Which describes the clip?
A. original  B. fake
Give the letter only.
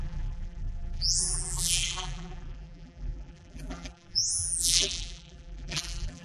B